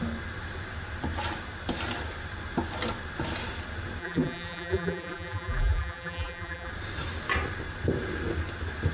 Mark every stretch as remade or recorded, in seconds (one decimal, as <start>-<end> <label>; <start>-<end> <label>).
0.0-4.0 recorded; 4.0-6.7 remade; 6.7-8.9 recorded